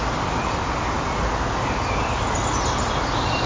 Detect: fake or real real